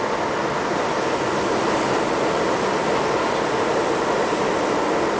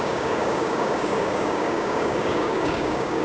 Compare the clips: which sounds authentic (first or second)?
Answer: first